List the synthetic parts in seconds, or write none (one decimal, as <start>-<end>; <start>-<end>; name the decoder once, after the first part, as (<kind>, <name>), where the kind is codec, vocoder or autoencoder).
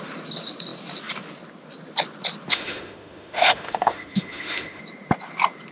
2.5-4.8 (autoencoder, DAC-VAE)